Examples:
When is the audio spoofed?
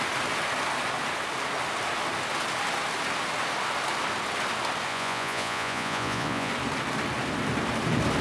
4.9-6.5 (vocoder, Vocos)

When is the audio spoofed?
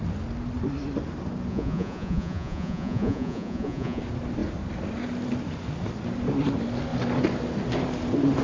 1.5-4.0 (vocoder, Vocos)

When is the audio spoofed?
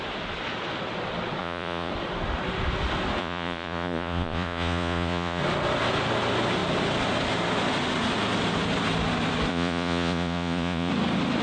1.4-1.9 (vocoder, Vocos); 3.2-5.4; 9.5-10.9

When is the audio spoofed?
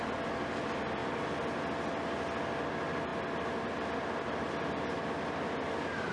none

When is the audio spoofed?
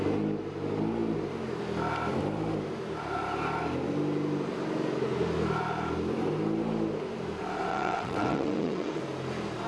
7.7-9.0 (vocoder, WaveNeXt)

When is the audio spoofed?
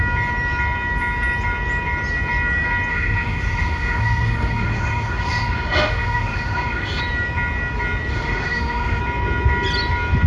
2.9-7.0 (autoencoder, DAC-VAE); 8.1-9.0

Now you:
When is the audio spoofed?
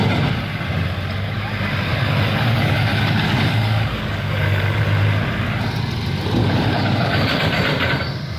1.9-4.8 (codec, DAC); 6.4-7.5